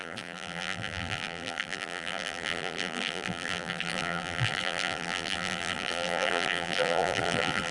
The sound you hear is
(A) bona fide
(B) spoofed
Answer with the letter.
B